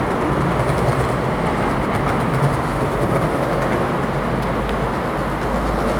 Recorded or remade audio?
recorded